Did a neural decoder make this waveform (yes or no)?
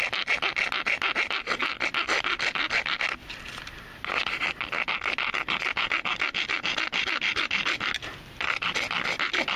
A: no